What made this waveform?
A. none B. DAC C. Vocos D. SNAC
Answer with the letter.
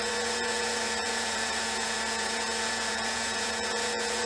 C